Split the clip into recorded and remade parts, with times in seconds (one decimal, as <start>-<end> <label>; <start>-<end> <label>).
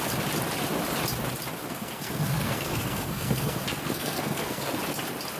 0.0-1.6 recorded; 1.6-4.8 remade; 4.8-5.4 recorded